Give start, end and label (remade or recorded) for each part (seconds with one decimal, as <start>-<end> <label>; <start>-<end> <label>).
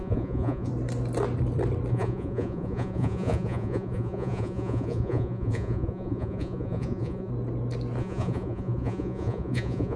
0.0-0.7 remade; 0.7-1.9 recorded; 1.9-7.3 remade; 7.3-8.0 recorded; 8.0-10.0 remade